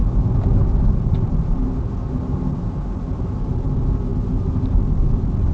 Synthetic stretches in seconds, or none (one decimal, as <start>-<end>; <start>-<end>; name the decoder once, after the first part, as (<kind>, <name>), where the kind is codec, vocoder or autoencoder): none